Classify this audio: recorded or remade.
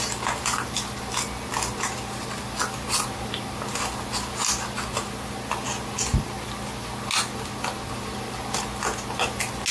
recorded